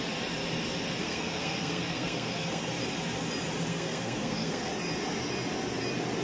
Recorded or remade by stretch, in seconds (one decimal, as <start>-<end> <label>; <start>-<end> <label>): 0.0-1.0 recorded; 1.0-2.7 remade; 2.7-3.7 recorded; 3.7-4.7 remade; 4.7-6.2 recorded